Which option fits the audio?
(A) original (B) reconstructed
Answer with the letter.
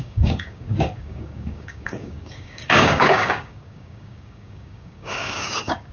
B